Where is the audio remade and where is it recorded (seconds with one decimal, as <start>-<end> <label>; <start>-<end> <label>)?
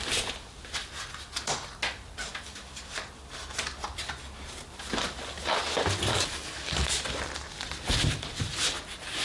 0.0-6.1 recorded; 6.1-6.9 remade; 6.9-9.2 recorded